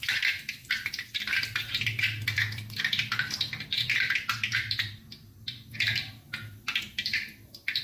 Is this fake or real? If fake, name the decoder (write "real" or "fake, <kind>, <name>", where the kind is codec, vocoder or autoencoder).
real